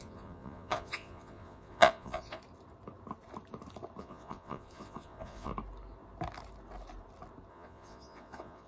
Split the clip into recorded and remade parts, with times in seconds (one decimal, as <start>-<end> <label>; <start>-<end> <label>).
0.0-2.4 remade; 2.4-4.0 recorded; 4.0-5.5 remade; 5.5-7.5 recorded; 7.5-8.7 remade